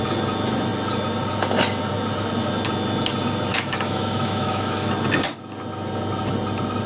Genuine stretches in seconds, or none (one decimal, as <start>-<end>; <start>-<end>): 0.0-3.5; 4.9-6.9